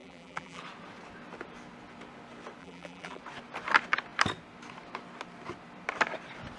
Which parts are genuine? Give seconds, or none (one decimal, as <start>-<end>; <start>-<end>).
0.6-2.6; 3.2-6.6